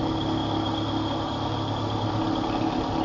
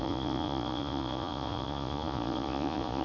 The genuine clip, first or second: first